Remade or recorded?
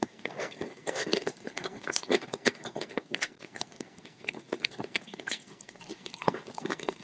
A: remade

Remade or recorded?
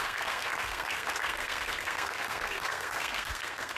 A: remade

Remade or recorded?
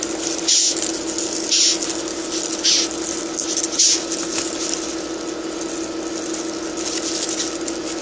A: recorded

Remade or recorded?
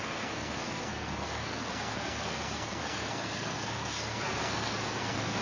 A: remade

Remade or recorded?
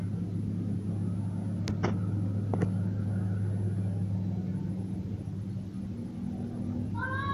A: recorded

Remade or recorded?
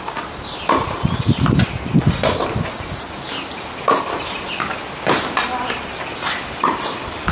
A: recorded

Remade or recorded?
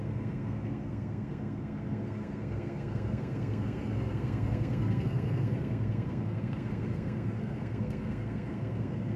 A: remade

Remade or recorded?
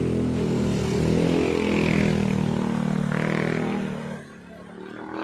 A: recorded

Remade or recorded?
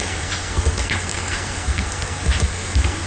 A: remade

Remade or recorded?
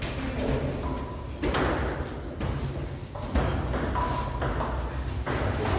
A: recorded